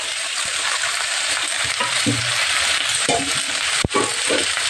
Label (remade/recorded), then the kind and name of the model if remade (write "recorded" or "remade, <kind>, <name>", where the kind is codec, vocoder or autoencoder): remade, vocoder, BigVGAN v2